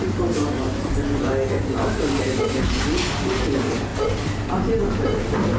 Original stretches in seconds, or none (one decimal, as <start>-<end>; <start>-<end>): 0.0-5.6